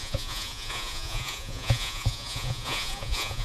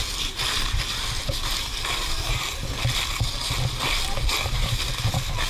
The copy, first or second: first